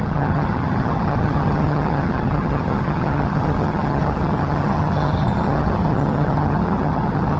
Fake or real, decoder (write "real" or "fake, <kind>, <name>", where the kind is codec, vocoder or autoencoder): fake, vocoder, HiFi-GAN